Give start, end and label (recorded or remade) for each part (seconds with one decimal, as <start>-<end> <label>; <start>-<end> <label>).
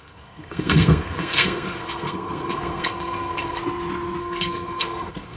0.0-3.6 remade; 3.6-4.2 recorded; 4.2-5.4 remade